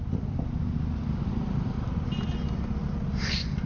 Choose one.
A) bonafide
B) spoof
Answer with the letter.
A